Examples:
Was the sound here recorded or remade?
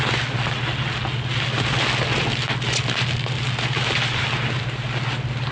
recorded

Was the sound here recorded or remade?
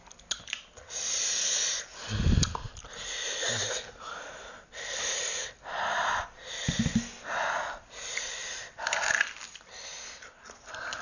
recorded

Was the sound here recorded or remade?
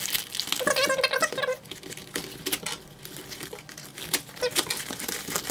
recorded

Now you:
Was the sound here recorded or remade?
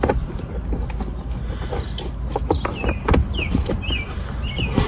recorded